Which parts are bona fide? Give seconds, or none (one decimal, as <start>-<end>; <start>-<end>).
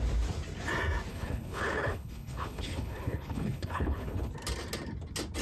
0.0-1.1; 4.3-5.4